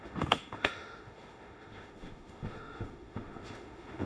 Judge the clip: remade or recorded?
remade